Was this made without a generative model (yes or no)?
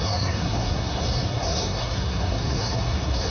no